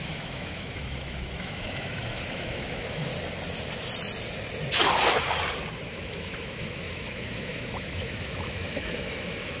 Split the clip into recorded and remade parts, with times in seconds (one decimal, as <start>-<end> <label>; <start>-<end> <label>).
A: 0.0-3.1 remade; 3.1-5.9 recorded; 5.9-9.6 remade